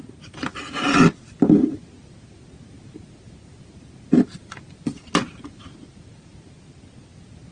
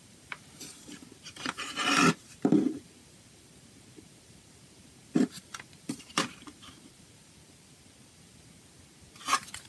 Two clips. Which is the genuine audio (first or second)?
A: first